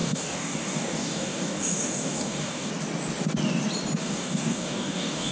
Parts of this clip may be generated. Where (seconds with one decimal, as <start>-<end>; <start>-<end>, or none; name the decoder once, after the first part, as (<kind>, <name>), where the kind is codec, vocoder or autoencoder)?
0.0-2.7 (codec, DAC); 4.0-5.3